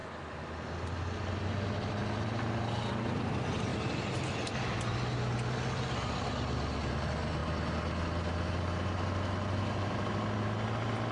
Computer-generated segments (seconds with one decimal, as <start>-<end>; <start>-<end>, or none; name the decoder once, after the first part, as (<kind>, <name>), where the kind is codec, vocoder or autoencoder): none